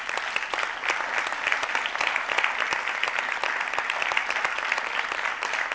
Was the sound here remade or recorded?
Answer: recorded